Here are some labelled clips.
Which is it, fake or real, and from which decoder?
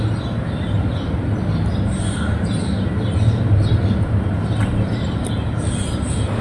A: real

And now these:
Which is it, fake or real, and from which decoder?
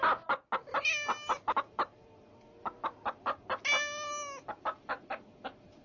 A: real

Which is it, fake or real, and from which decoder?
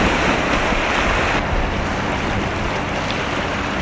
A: real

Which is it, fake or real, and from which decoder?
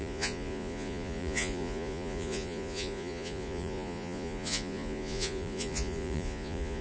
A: fake, vocoder, Vocos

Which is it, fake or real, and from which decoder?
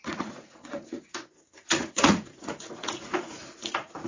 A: fake, vocoder, Vocos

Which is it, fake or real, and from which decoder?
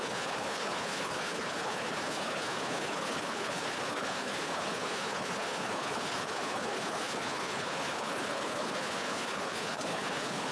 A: fake, codec, HILCodec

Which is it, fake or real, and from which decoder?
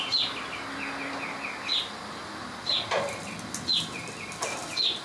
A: real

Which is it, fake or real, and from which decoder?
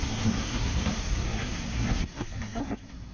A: fake, codec, SNAC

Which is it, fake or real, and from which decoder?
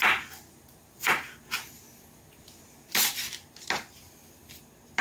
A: real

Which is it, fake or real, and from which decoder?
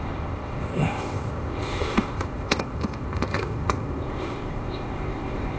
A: fake, codec, ZipCodec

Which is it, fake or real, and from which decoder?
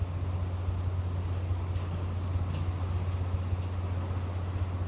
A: real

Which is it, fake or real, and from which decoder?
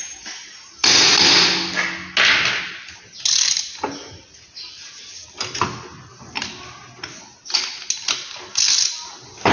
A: real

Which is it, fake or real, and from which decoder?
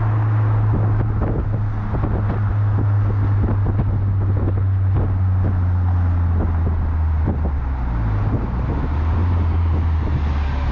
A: real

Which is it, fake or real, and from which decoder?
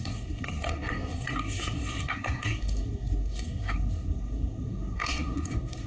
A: fake, codec, SNAC